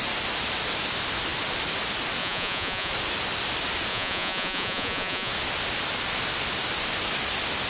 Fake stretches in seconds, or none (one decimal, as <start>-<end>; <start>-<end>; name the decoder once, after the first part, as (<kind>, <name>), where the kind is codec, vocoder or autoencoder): 2.2-2.9 (vocoder, Vocos); 3.9-5.3